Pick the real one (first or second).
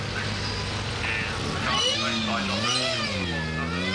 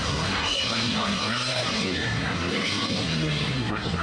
first